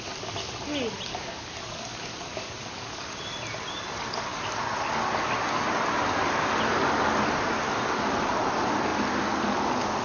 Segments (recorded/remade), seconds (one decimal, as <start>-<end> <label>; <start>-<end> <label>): 0.0-1.1 recorded; 1.1-3.0 remade; 3.0-10.0 recorded